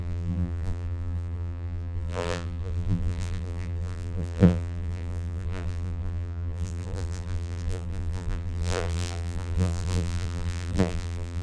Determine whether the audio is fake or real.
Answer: fake